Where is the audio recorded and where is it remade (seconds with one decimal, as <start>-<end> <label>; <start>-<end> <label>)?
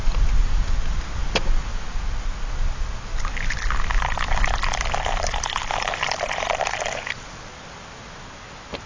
0.0-8.9 recorded